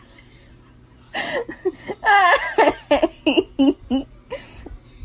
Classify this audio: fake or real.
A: real